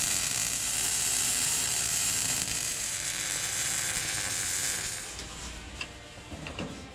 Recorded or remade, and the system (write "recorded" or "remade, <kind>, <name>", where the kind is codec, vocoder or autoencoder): remade, vocoder, BigVGAN v2